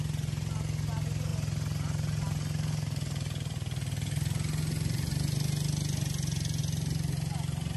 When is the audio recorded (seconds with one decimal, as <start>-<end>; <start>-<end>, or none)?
0.0-7.8